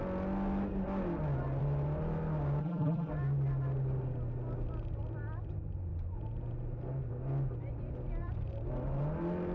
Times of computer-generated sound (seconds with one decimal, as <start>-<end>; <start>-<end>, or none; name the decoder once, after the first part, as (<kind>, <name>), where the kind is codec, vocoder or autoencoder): 2.6-3.1 (vocoder, BigVGAN v2)